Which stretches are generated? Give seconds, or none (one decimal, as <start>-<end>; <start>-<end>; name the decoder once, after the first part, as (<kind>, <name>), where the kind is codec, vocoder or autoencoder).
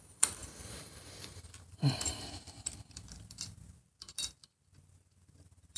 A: 0.0-5.8 (vocoder, BigVGAN v2)